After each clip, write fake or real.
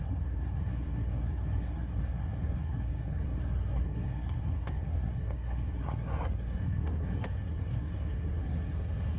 fake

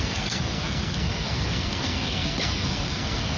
fake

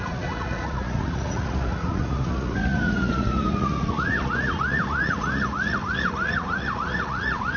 fake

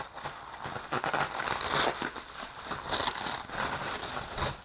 real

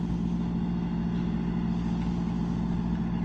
real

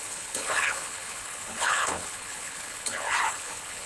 fake